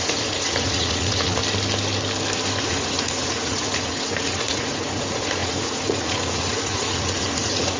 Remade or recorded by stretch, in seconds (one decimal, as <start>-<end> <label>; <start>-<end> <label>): 0.0-1.4 remade; 1.4-2.6 recorded; 2.6-7.8 remade